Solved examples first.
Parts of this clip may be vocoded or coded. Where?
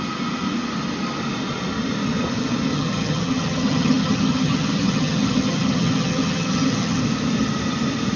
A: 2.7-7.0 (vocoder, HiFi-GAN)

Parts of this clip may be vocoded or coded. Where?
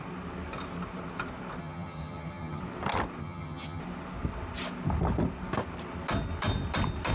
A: 1.6-2.6 (vocoder, HiFi-GAN); 3.2-3.8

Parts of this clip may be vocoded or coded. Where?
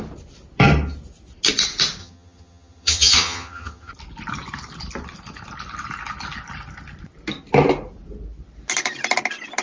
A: 2.0-3.9 (vocoder, HiFi-GAN)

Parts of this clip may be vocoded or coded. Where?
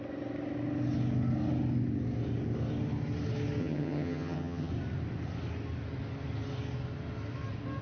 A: 3.6-4.7 (vocoder, HiFi-GAN)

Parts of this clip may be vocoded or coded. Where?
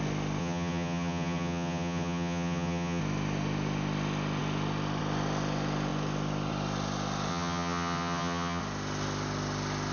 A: 0.4-3.0 (vocoder, HiFi-GAN); 7.3-8.6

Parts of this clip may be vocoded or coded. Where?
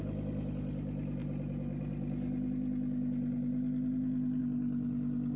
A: none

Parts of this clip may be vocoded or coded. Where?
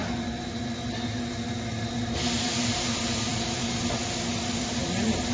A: none